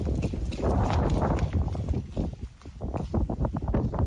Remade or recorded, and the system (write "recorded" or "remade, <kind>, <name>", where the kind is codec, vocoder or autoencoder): recorded